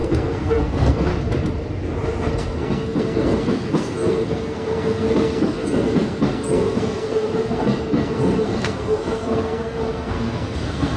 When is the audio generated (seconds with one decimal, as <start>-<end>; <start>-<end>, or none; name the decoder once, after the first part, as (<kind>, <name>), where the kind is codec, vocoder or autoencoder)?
0.0-1.1 (codec, SNAC); 2.2-11.0